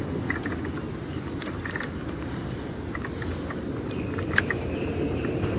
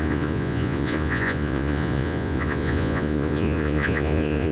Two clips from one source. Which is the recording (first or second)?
first